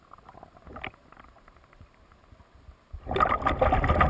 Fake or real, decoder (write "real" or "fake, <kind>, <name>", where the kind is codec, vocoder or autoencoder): real